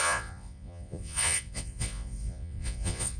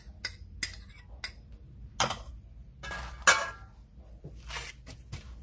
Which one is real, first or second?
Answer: second